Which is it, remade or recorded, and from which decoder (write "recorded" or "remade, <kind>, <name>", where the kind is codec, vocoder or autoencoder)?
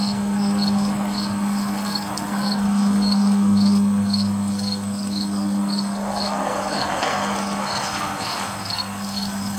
remade, codec, SNAC